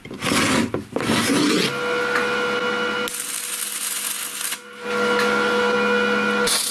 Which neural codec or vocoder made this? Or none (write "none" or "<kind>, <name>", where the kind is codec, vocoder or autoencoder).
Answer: none